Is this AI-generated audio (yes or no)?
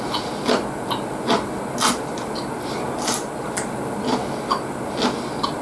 no